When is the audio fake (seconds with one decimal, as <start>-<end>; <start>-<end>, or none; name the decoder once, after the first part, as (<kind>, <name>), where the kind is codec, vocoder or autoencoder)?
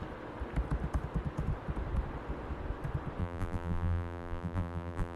3.2-5.2 (vocoder, BigVGAN v2)